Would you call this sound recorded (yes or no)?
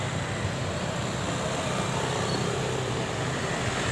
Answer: yes